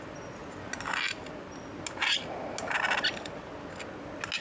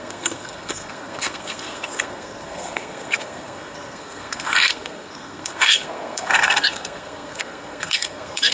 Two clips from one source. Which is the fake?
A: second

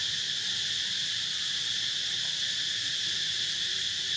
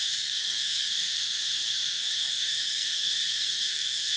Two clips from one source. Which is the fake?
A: second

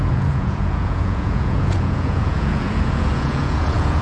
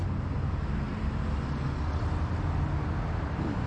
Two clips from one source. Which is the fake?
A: first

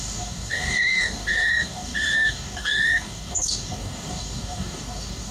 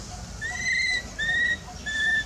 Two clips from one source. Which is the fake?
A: first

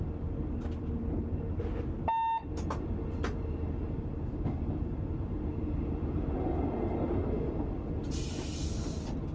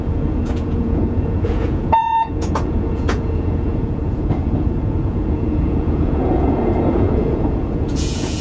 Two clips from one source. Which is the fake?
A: second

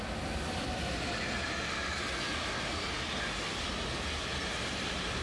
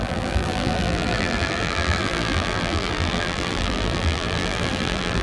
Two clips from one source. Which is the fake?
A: second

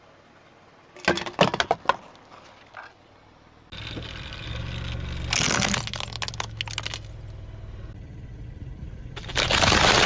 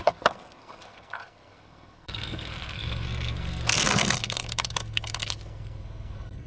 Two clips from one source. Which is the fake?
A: second